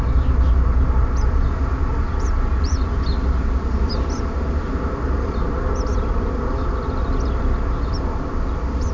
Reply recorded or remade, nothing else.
recorded